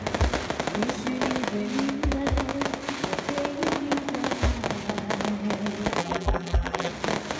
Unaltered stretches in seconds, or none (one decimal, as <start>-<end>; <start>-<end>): 0.0-6.0; 6.9-7.4

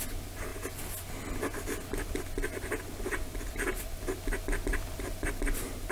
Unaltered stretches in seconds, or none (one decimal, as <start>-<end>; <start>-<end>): 0.0-0.5; 4.0-4.7; 5.3-5.9

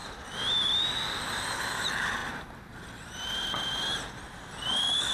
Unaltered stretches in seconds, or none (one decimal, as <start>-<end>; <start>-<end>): 2.2-4.5

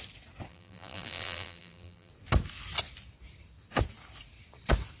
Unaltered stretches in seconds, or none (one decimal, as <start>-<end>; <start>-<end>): 0.0-0.5; 2.1-5.0

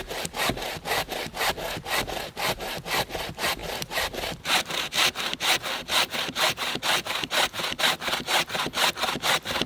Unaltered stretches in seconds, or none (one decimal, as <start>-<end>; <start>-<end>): 0.0-3.6; 7.8-9.7

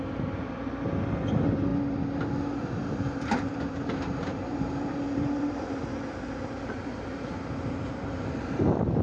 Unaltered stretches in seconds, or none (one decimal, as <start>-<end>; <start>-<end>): 0.0-2.8; 7.6-9.0

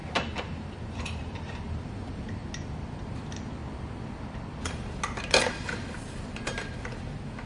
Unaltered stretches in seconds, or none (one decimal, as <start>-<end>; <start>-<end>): 0.0-0.9; 2.4-2.9; 3.6-5.2